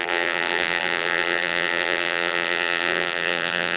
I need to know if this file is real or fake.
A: fake